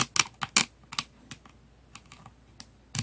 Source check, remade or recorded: recorded